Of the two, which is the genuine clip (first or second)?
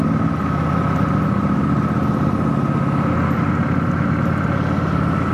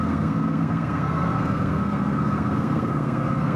first